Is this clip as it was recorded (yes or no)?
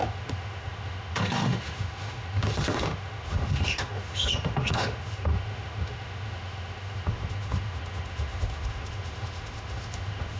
no